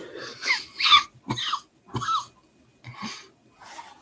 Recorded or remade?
recorded